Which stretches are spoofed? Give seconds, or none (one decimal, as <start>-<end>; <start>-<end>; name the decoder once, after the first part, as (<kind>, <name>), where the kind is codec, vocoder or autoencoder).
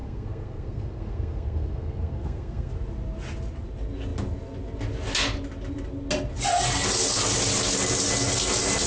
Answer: 0.0-2.7 (codec, SNAC)